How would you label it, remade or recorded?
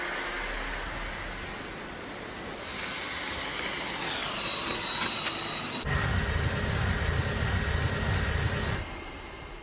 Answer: recorded